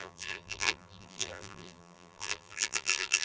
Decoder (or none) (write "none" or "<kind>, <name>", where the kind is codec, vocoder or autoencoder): vocoder, BigVGAN v2